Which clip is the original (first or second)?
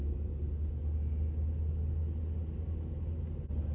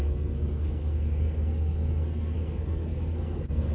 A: first